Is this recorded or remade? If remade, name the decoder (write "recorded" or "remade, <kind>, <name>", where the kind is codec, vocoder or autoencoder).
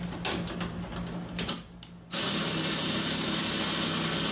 recorded